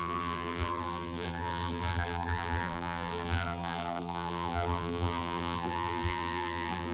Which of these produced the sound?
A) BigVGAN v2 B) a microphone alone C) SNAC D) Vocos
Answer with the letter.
A